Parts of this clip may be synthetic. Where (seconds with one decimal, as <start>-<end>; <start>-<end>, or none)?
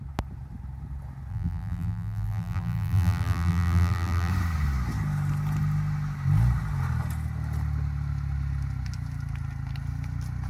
1.3-4.3